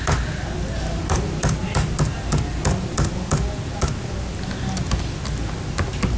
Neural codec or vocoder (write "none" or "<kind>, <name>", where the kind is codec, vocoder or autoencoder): none